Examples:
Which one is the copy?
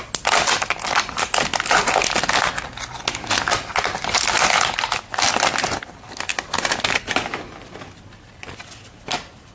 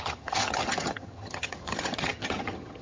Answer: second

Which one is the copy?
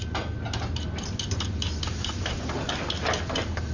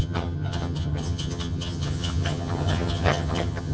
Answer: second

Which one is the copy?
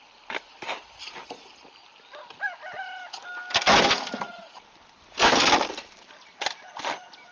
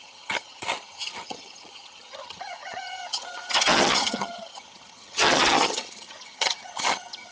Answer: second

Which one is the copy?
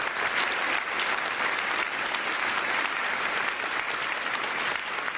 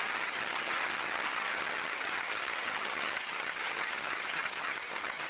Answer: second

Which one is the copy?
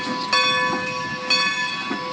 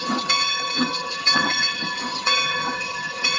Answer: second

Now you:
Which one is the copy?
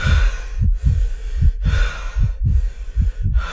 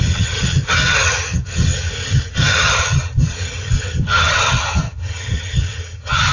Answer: second